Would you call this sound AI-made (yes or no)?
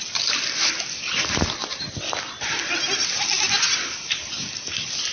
no